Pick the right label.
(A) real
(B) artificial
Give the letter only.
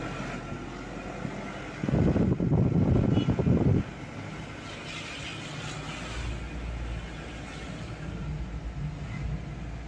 A